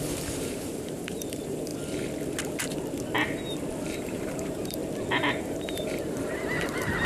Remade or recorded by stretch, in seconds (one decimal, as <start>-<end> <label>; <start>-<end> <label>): 0.0-1.7 remade; 1.7-3.9 recorded; 3.9-4.8 remade; 4.8-5.4 recorded; 5.4-7.1 remade